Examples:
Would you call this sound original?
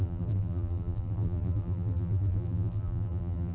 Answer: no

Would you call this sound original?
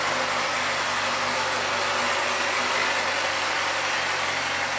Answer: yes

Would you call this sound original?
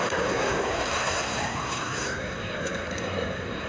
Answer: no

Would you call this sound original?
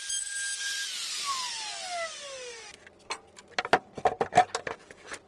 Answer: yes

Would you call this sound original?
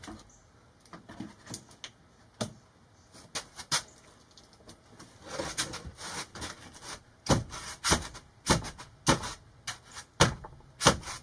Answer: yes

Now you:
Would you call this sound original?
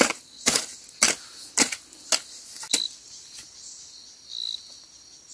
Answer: yes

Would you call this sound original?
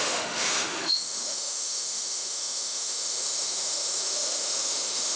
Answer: no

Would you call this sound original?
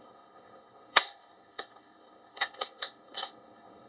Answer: no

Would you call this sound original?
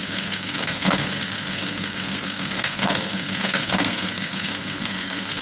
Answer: no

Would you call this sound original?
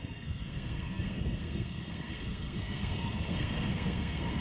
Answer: no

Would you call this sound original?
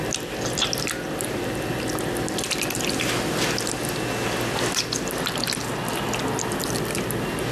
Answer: yes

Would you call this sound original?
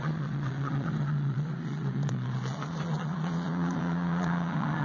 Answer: no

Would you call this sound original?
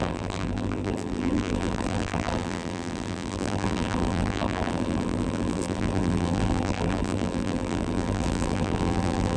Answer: no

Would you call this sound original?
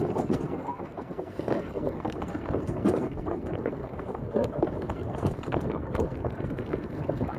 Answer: no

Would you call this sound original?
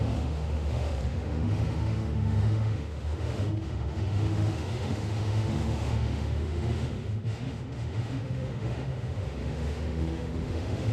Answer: no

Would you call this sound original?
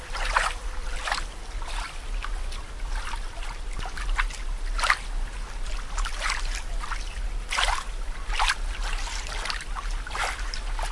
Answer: yes